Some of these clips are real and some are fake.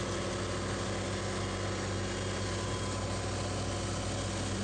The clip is real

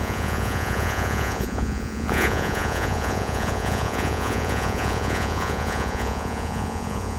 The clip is fake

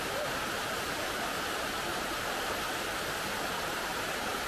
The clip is real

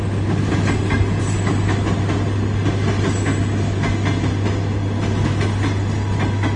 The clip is real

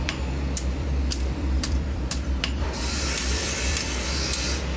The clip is fake